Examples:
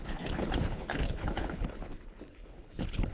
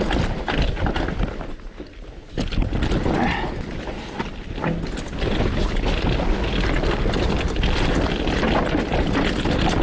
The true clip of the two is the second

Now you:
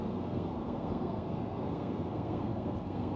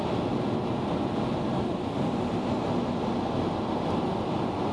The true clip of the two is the second